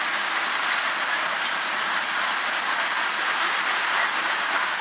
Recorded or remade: recorded